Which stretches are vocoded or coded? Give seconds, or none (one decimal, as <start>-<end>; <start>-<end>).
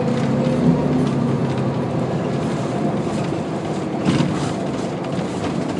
none